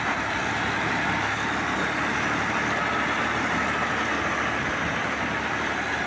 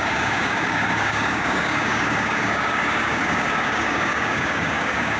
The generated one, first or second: second